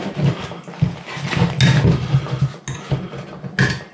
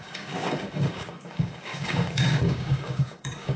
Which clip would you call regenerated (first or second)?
second